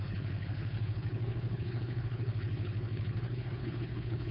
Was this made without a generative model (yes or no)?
no